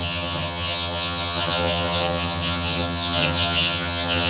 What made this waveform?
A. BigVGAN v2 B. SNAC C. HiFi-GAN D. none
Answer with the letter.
C